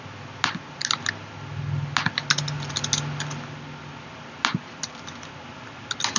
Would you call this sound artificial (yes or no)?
no